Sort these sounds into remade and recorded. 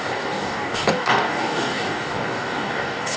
remade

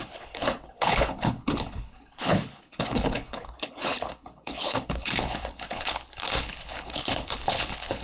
remade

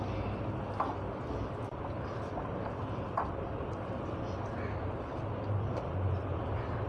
recorded